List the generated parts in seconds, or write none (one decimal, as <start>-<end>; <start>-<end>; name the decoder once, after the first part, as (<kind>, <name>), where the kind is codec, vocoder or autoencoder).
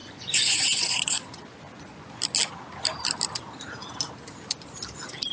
0.0-2.1 (vocoder, Vocos)